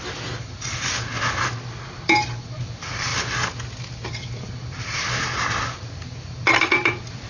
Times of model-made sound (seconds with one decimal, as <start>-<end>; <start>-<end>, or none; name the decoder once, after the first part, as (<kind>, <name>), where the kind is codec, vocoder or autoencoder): none